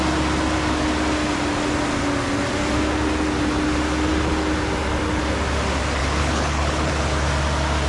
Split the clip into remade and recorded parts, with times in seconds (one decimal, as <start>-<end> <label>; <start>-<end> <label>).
0.0-6.0 recorded; 6.0-6.9 remade; 6.9-7.9 recorded